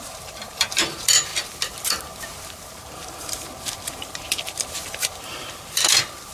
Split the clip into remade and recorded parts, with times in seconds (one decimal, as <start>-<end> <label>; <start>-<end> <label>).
0.0-6.3 remade